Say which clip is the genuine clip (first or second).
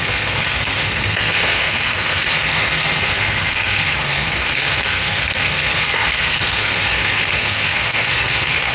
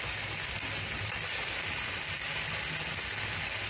second